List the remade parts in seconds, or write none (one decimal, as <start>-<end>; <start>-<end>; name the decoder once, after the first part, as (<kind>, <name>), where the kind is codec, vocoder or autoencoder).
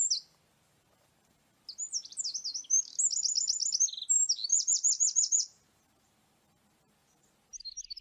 4.5-5.8 (vocoder, BigVGAN v2)